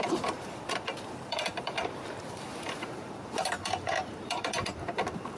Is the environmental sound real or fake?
fake